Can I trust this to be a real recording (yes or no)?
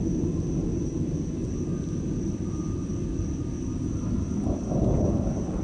yes